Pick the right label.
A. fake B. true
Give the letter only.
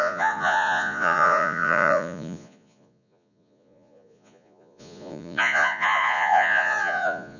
A